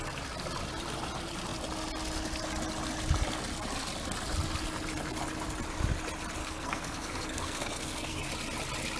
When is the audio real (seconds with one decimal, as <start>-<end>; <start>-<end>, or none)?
0.0-6.4; 8.3-9.0